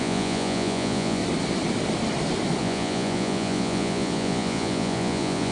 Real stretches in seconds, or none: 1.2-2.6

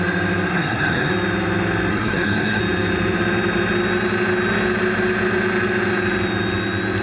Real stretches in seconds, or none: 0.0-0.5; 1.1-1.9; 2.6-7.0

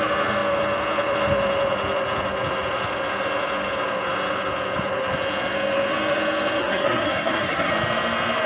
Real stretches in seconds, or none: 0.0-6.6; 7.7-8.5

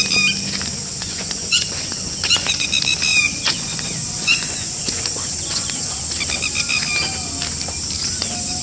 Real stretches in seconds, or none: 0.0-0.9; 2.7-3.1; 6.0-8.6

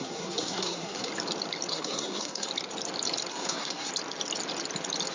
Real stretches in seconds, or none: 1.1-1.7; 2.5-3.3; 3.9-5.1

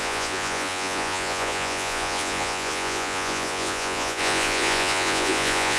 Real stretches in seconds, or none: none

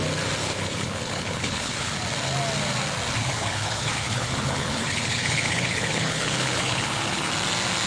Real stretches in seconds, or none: 0.0-0.4; 1.9-3.2; 7.3-7.9

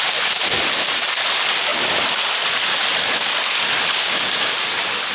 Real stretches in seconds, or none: 0.0-5.1